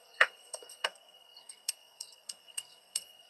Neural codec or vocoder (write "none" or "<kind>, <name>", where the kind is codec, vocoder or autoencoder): codec, SNAC